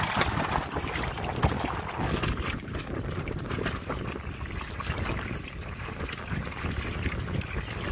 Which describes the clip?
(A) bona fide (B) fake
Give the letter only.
A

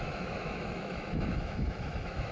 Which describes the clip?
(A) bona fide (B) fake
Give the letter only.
B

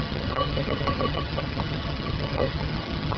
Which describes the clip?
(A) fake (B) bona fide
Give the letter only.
A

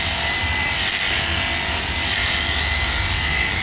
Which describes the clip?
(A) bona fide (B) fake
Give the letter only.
A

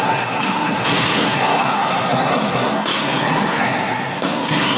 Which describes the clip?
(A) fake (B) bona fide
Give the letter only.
A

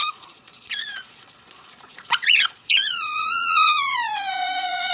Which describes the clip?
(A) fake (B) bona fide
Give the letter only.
A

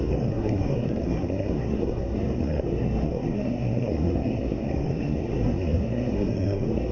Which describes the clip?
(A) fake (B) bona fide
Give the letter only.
A